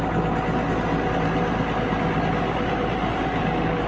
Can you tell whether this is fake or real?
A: real